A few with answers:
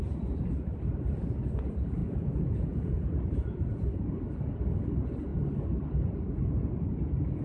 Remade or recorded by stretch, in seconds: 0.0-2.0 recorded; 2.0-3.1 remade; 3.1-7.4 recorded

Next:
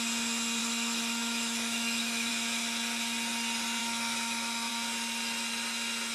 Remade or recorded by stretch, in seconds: 0.0-0.6 recorded; 0.6-2.3 remade; 2.3-3.8 recorded; 3.8-4.7 remade; 4.7-6.1 recorded